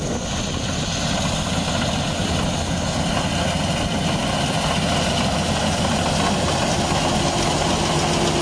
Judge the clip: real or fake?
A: real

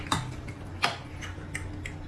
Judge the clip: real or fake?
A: real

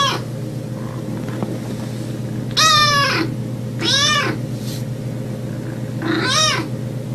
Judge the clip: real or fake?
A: real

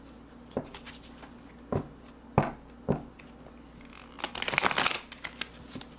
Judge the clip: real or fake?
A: real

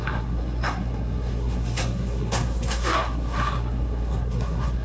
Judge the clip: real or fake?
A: fake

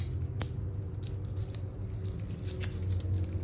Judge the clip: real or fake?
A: real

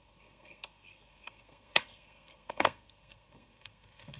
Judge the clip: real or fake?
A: fake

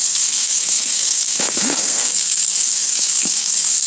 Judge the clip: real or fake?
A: fake